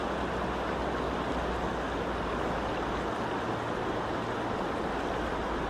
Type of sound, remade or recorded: recorded